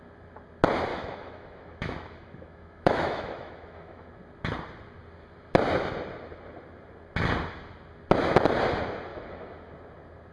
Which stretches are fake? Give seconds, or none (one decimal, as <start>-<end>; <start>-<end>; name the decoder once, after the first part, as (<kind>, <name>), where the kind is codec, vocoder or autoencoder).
0.9-4.1 (autoencoder, DAC-VAE); 9.1-9.7